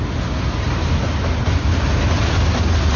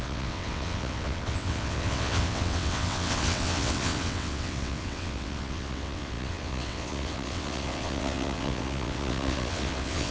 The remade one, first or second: second